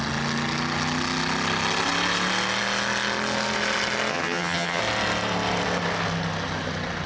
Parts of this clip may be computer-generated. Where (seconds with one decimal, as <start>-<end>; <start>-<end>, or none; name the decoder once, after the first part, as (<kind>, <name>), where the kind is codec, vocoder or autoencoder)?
4.1-4.8 (vocoder, HiFi-GAN)